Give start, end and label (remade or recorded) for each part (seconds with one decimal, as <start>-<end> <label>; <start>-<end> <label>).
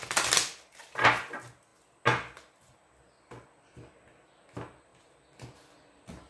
0.0-6.3 recorded